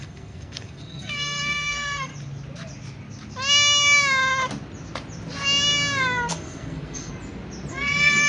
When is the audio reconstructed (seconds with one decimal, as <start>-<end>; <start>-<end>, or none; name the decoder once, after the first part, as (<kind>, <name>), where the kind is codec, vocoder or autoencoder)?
0.0-2.1 (codec, SNAC); 6.3-7.1; 7.7-8.3